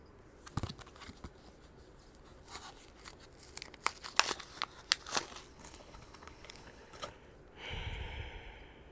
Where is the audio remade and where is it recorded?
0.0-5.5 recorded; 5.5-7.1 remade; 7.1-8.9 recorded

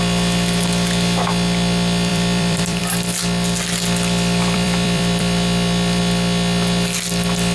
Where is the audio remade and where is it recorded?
0.0-2.1 recorded; 2.1-2.8 remade; 2.8-4.4 recorded; 4.4-6.0 remade; 6.0-7.5 recorded

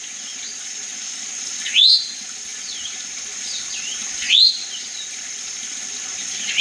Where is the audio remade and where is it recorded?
0.0-6.6 recorded

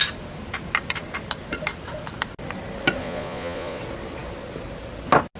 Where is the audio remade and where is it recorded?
0.0-3.0 recorded; 3.0-3.8 remade; 3.8-5.4 recorded

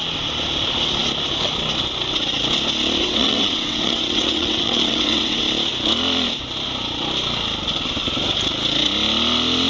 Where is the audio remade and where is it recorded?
0.0-3.0 recorded; 3.0-5.4 remade; 5.4-9.7 recorded

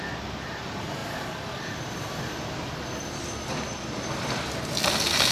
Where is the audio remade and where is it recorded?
0.0-5.3 recorded